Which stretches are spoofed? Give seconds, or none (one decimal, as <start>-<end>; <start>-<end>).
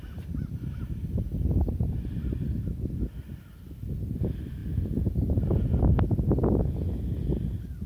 none